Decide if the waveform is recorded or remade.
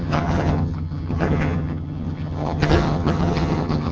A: remade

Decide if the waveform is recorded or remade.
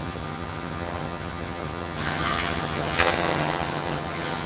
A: remade